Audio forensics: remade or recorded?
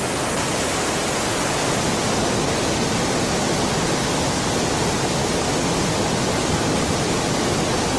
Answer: recorded